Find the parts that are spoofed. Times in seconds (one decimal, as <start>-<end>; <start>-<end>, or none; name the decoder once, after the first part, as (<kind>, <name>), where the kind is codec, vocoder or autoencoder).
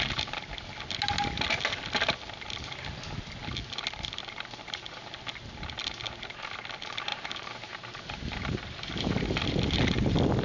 7.1-9.2 (vocoder, BigVGAN v2)